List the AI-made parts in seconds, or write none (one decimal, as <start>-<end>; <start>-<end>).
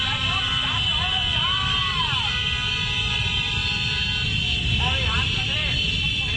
0.0-0.9; 3.2-3.6; 5.1-6.4